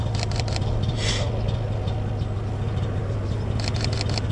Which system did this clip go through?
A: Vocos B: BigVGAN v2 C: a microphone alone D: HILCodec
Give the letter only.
C